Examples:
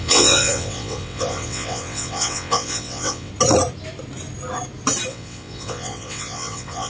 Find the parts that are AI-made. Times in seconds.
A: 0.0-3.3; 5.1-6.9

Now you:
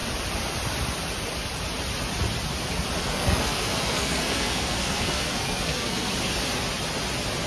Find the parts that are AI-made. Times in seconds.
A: 3.0-6.1

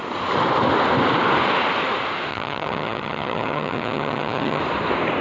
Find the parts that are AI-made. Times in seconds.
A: 2.3-4.6